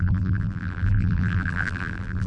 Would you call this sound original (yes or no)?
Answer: no